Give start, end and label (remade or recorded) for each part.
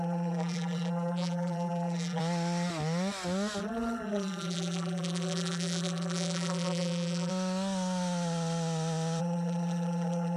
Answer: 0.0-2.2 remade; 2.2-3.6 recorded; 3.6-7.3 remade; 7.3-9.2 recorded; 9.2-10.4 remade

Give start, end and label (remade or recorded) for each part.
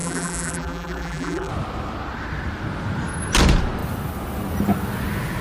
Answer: 0.0-1.5 remade; 1.5-5.4 recorded